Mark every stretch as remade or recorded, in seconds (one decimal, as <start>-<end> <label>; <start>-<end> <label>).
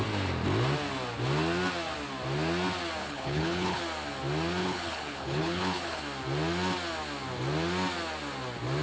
0.0-3.0 recorded; 3.0-3.8 remade; 3.8-4.6 recorded; 4.6-6.0 remade; 6.0-8.8 recorded